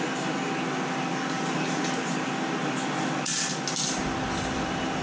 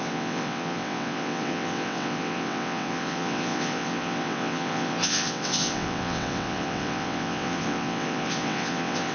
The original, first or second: first